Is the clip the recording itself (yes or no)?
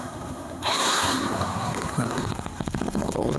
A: no